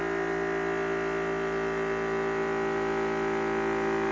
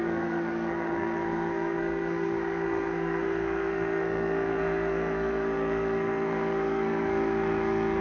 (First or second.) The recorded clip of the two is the first